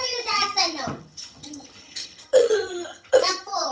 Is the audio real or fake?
fake